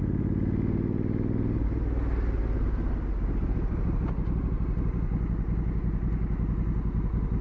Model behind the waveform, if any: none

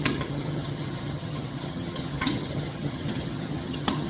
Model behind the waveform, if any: vocoder, HiFi-GAN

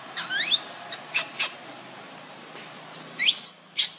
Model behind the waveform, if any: none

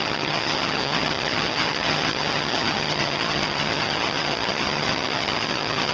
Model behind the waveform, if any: vocoder, HiFi-GAN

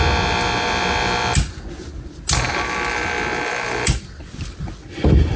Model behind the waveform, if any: none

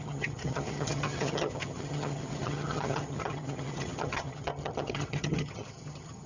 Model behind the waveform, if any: vocoder, HiFi-GAN